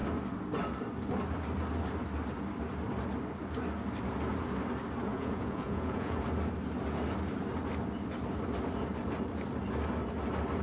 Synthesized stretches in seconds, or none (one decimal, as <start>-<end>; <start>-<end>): 5.1-6.2